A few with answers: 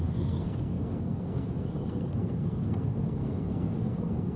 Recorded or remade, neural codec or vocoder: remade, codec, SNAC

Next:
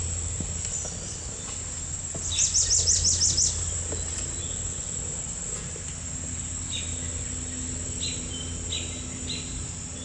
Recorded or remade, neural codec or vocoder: recorded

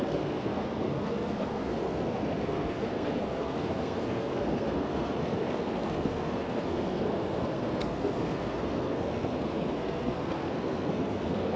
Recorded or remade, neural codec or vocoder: remade, codec, SNAC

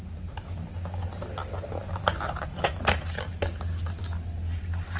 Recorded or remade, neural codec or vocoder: recorded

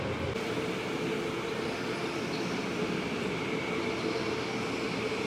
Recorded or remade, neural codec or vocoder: recorded